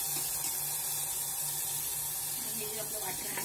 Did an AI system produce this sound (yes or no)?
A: no